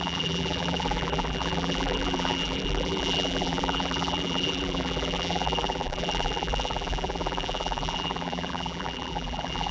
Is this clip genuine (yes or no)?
no